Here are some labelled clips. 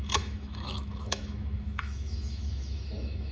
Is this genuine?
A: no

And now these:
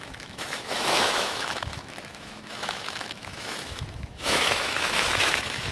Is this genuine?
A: no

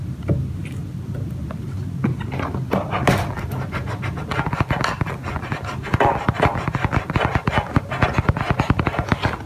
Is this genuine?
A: yes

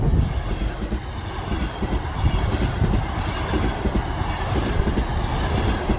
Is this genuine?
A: yes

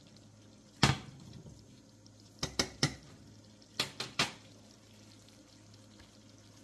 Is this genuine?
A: yes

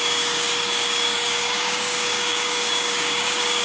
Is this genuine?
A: no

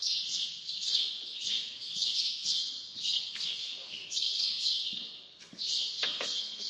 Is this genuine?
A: no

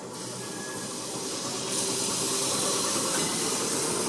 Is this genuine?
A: yes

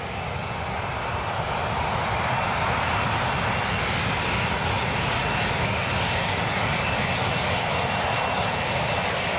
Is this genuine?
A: yes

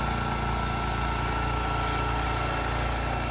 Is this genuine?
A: yes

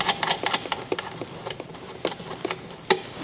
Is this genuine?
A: yes